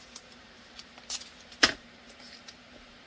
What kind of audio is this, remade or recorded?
remade